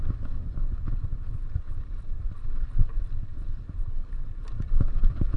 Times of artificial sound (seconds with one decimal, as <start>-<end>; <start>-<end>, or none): none

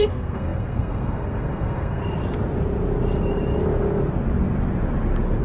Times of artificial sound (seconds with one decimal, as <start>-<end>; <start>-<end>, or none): 0.0-2.0

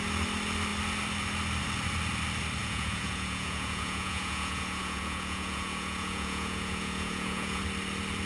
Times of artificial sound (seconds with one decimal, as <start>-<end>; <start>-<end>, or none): 2.6-7.6

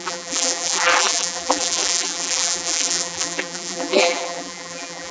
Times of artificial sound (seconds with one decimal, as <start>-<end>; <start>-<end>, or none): 0.0-5.1

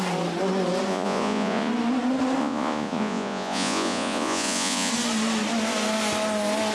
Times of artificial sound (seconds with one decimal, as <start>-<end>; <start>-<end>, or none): 0.9-1.7; 2.4-4.9

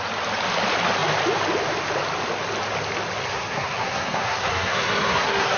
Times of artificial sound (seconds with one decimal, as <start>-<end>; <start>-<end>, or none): 3.3-5.6

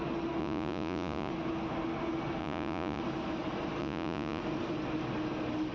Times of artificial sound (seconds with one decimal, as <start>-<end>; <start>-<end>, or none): 0.4-1.3; 2.4-3.0; 3.8-4.4